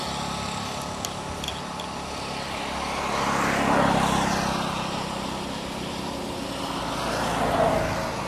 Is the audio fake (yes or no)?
no